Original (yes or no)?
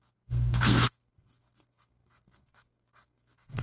no